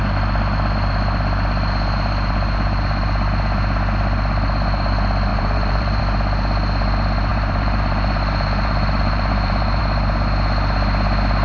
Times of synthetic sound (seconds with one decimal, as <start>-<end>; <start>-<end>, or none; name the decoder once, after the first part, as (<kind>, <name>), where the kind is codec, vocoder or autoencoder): 5.3-6.0 (vocoder, BigVGAN v2); 7.3-9.8